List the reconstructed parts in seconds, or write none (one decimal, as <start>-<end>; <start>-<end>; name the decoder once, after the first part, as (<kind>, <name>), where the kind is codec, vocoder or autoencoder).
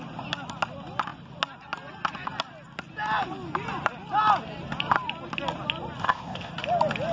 6.0-6.5 (codec, ZipCodec)